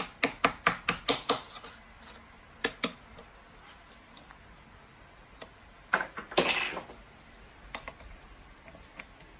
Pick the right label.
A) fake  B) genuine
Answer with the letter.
B